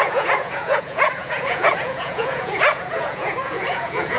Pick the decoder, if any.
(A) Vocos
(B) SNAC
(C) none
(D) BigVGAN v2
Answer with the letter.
A